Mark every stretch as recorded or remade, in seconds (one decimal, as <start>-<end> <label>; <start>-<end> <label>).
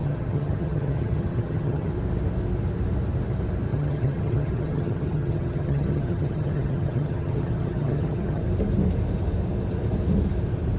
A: 0.0-1.9 remade; 1.9-3.7 recorded; 3.7-8.4 remade; 8.4-10.8 recorded